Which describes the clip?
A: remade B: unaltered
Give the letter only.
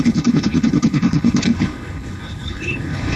A